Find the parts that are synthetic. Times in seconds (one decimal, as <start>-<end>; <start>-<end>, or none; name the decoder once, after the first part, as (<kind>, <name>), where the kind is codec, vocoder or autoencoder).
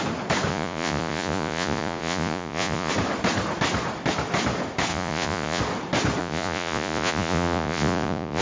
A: 0.5-2.9 (vocoder, Vocos); 4.9-5.6; 6.2-8.4